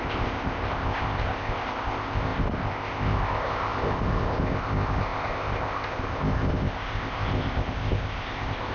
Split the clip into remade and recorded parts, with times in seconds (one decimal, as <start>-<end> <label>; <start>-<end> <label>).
0.0-8.7 remade